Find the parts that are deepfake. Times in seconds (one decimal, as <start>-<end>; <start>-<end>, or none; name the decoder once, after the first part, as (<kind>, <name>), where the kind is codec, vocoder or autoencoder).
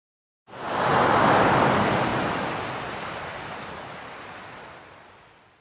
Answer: none